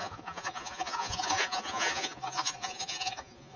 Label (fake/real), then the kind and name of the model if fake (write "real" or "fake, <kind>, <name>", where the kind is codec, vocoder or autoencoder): fake, vocoder, Vocos